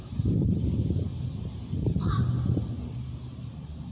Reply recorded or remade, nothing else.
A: remade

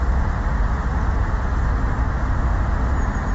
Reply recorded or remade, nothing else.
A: recorded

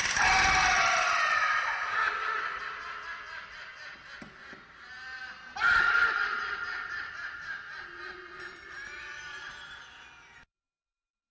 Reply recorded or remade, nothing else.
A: recorded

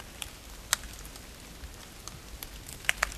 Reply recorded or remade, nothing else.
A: recorded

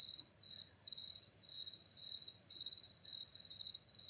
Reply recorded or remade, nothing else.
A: remade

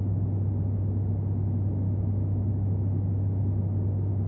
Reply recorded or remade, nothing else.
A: recorded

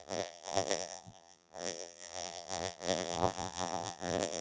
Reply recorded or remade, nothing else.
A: remade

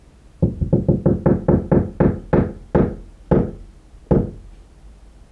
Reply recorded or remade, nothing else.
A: recorded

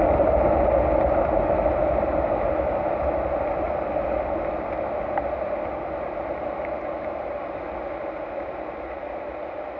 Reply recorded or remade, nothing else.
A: recorded